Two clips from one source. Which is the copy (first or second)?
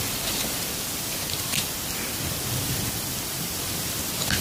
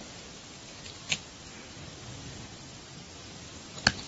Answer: first